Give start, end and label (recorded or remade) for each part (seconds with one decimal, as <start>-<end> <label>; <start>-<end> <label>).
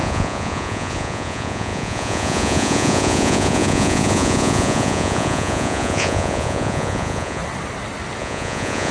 0.0-7.4 remade; 7.4-8.2 recorded; 8.2-8.9 remade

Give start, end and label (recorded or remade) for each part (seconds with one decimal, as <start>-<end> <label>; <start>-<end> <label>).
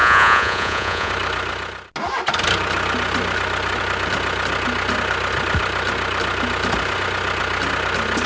0.0-1.1 remade; 1.1-8.3 recorded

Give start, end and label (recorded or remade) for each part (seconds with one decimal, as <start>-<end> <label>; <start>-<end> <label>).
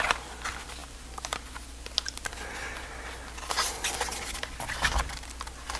0.0-5.8 recorded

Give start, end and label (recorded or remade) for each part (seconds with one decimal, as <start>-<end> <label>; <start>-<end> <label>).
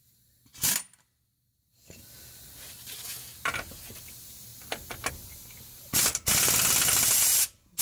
0.0-7.8 recorded